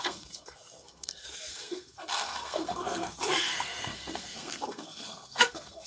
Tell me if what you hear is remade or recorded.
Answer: remade